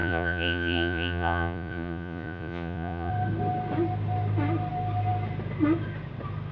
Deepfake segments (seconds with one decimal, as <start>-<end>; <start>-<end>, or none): 0.0-3.1